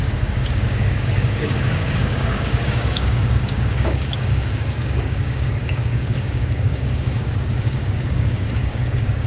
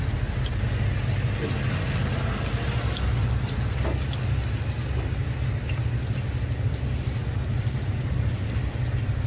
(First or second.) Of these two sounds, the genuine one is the second